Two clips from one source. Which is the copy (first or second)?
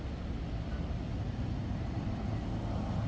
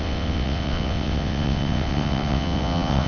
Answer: second